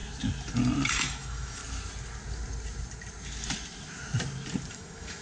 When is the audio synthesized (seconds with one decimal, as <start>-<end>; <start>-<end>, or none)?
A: 0.9-1.6; 4.7-5.2